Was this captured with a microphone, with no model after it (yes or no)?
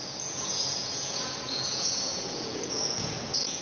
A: no